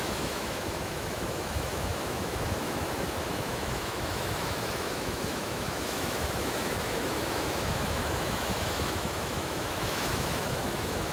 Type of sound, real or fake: fake